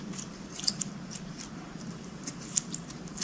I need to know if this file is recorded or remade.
remade